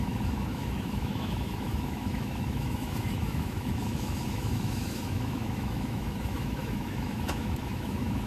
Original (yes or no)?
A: no